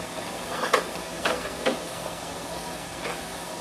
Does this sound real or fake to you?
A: fake